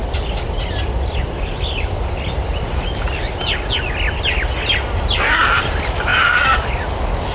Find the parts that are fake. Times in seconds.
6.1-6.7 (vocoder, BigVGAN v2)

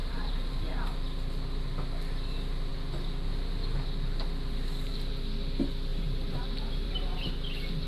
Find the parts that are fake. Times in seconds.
0.0-1.0 (vocoder, BigVGAN v2); 5.9-7.3